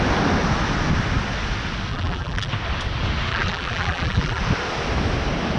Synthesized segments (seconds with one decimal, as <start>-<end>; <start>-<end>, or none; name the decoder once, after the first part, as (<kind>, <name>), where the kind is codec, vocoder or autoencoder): 1.9-2.5 (vocoder, BigVGAN v2); 3.3-4.4